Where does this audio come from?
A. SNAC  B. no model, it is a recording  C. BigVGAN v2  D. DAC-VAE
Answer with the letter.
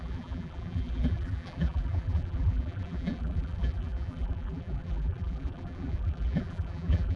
C